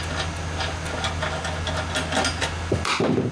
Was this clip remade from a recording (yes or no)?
no